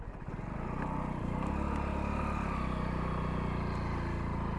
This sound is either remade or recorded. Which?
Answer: recorded